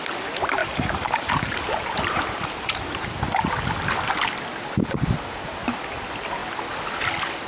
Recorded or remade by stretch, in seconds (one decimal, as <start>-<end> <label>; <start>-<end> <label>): 0.0-0.6 recorded; 0.6-3.2 remade; 3.2-7.5 recorded